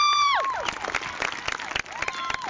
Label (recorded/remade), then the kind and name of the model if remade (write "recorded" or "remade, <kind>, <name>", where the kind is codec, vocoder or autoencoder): recorded